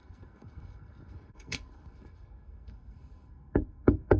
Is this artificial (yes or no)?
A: yes